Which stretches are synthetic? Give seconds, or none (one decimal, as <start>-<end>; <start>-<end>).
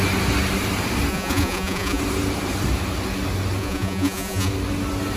1.1-2.0; 3.6-4.5